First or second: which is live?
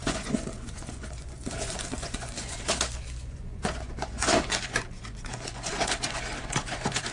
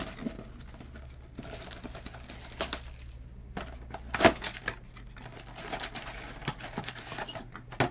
second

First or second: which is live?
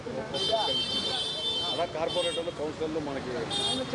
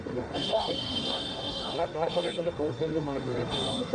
first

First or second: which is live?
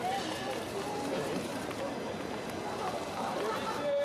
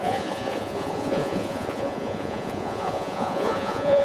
first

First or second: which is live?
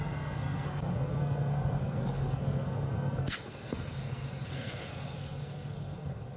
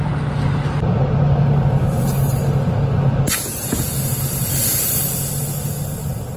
second